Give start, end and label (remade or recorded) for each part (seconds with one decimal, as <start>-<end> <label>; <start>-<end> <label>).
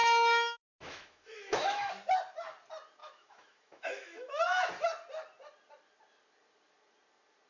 0.0-1.9 remade; 1.9-3.0 recorded; 3.0-4.7 remade; 4.7-7.5 recorded